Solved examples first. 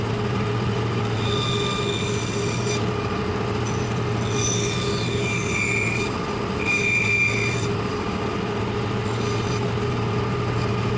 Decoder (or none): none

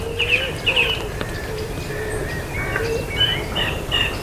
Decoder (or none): none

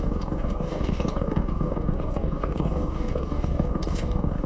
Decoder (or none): codec, DAC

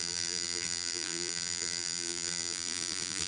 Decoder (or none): vocoder, BigVGAN v2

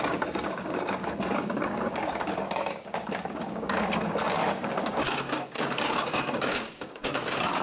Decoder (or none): codec, DAC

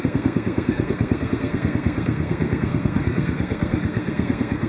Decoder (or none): codec, SNAC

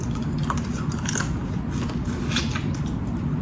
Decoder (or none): none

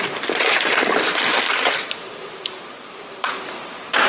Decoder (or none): vocoder, BigVGAN v2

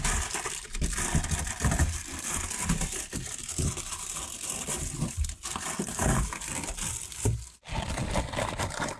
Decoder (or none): none